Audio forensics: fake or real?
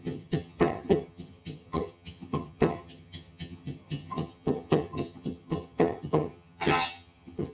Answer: fake